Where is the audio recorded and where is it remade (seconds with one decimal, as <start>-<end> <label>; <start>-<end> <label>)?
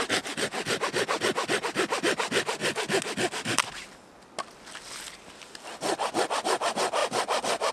0.0-7.7 recorded